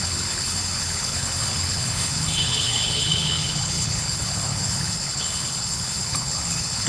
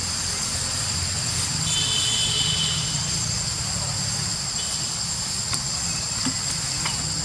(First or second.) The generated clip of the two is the first